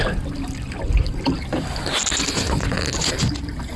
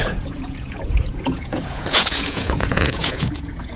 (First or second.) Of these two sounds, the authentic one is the first